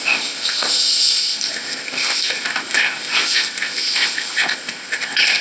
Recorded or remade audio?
remade